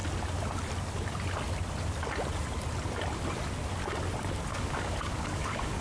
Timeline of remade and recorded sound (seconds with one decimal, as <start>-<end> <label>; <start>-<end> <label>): 0.0-4.5 recorded; 4.5-5.8 remade